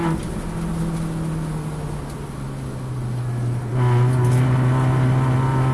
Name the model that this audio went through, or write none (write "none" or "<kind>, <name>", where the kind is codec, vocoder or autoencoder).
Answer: none